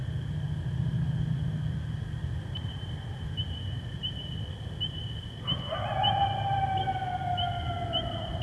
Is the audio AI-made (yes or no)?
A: yes